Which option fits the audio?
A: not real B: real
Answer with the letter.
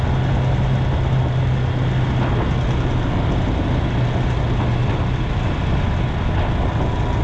B